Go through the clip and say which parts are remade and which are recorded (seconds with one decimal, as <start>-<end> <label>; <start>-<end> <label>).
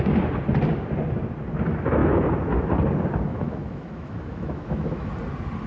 0.0-3.3 recorded; 3.3-5.1 remade; 5.1-5.7 recorded